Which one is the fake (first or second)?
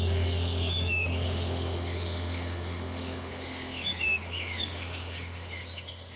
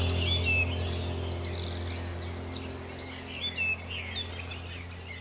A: first